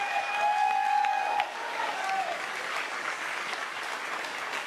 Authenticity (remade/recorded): remade